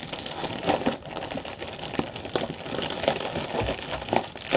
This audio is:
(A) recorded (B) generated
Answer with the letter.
A